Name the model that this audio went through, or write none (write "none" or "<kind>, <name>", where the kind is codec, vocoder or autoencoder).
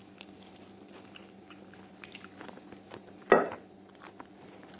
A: none